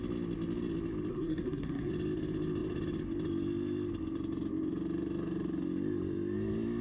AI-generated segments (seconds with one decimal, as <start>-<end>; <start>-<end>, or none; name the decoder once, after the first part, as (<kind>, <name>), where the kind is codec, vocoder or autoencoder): 1.1-1.9 (codec, SNAC)